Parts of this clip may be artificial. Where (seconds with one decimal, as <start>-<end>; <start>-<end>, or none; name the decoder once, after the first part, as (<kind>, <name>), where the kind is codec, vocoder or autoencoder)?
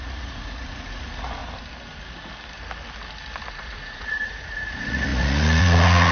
0.0-1.4 (vocoder, Vocos); 3.5-6.1